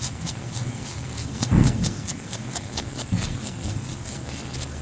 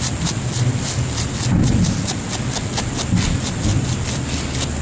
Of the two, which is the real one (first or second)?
second